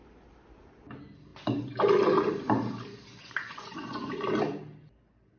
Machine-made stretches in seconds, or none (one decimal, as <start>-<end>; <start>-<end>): 3.1-4.1